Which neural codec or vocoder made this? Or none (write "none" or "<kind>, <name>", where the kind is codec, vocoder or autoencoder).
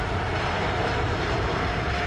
none